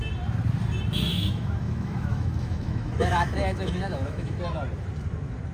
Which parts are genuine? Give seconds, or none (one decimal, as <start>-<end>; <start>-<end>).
0.0-1.1; 4.4-5.5

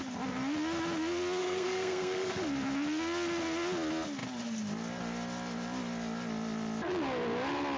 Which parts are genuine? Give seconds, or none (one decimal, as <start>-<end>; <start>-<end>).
0.0-1.4; 2.3-7.8

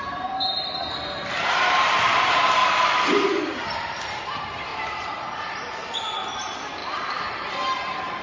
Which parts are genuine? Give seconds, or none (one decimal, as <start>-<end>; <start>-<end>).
4.7-6.3